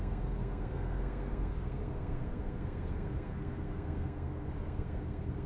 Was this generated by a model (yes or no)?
yes